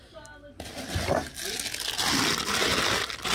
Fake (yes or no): no